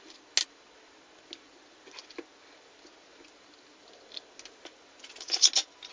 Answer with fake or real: real